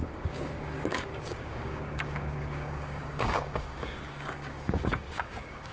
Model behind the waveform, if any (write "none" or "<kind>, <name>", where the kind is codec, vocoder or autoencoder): codec, DAC